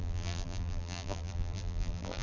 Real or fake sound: fake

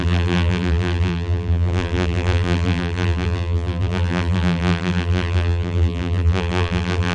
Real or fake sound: fake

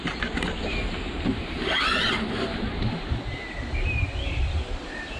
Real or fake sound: real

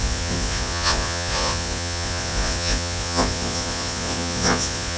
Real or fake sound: fake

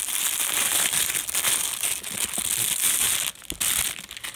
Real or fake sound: real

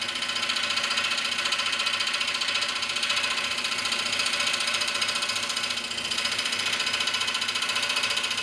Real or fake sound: fake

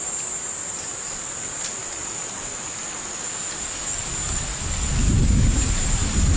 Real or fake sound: real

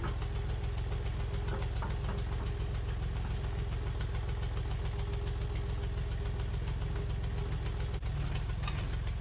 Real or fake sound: real